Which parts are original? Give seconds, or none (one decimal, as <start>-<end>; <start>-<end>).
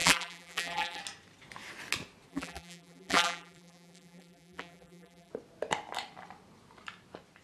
1.0-2.3; 5.3-7.4